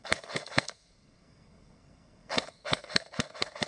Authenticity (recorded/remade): remade